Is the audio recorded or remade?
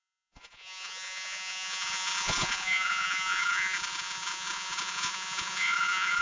remade